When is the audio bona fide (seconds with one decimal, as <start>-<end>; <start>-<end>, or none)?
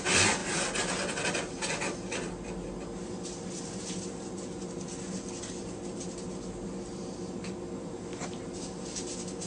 0.0-9.5